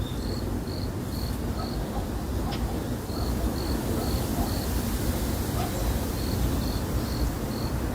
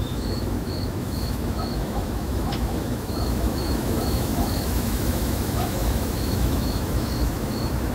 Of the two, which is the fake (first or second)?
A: second